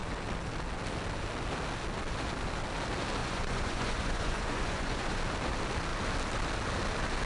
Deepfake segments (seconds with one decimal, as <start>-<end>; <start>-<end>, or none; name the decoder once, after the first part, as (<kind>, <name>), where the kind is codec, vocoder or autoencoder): 3.2-5.2 (vocoder, Vocos)